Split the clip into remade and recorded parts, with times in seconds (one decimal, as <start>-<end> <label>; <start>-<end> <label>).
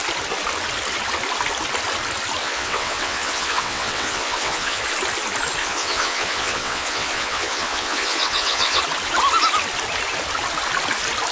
0.0-2.4 recorded; 2.4-4.8 remade; 4.8-5.6 recorded; 5.6-8.8 remade; 8.8-11.3 recorded